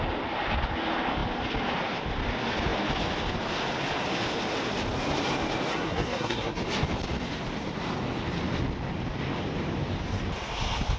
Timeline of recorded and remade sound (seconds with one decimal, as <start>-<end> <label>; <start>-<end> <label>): 0.0-5.7 recorded; 5.7-6.6 remade; 6.6-11.0 recorded